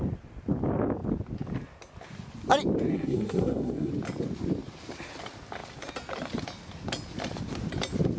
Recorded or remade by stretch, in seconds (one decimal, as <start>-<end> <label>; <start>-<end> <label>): 0.0-2.9 recorded; 2.9-3.9 remade; 3.9-8.2 recorded